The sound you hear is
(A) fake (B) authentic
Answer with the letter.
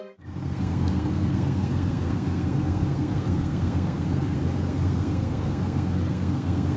A